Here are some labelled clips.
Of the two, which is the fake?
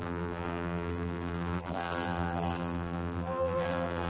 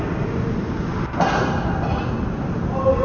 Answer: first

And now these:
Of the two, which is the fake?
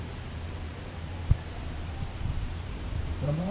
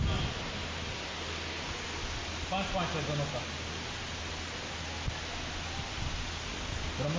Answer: first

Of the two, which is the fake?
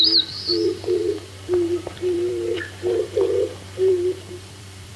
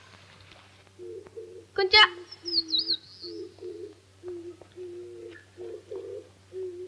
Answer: first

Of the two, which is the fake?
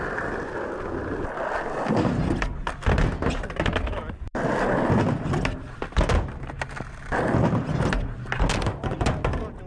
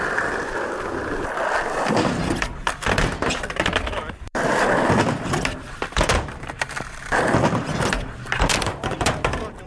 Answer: second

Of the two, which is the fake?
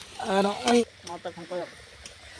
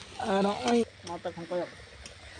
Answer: first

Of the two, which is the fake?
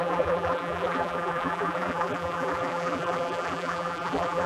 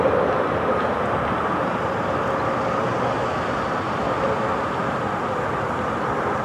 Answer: first